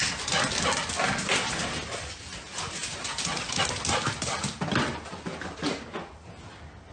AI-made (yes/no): no